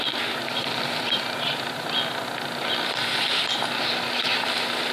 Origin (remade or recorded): recorded